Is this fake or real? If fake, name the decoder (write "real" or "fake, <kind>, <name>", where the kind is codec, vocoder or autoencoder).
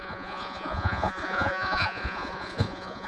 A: fake, vocoder, Vocos